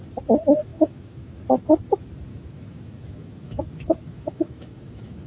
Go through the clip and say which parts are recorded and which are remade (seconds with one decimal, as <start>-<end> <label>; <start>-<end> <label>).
0.0-0.7 recorded; 0.7-1.4 remade; 1.4-2.3 recorded; 2.3-5.3 remade